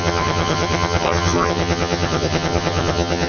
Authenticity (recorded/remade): remade